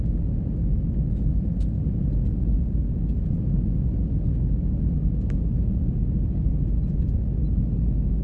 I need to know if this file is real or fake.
real